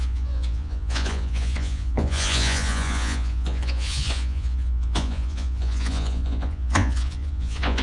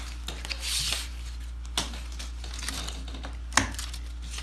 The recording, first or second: second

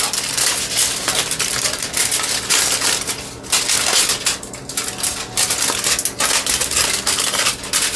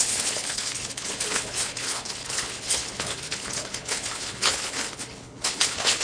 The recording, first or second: first